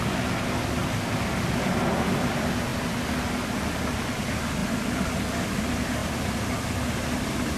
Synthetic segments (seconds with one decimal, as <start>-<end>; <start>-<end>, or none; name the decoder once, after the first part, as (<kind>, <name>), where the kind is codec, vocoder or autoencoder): 4.6-5.3 (vocoder, BigVGAN v2); 6.0-6.5